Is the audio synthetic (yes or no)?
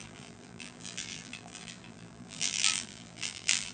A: yes